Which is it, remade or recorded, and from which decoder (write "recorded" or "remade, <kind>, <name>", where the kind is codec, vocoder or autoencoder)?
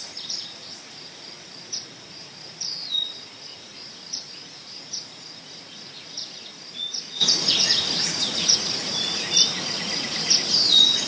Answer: remade, vocoder, Vocos